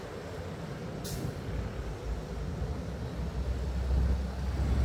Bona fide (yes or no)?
yes